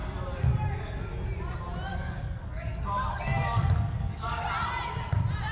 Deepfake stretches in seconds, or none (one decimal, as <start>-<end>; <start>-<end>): 1.9-4.4